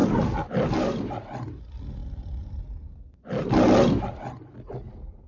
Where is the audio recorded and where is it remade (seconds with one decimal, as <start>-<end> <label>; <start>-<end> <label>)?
0.0-2.0 recorded; 2.0-2.6 remade; 2.6-5.3 recorded